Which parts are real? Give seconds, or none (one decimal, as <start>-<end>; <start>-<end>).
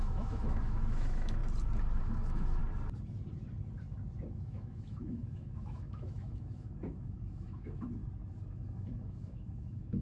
1.4-2.0; 2.6-4.3; 8.0-8.5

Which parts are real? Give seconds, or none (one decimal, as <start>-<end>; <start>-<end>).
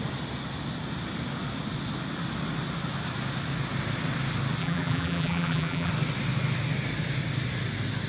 0.0-4.6; 5.9-8.1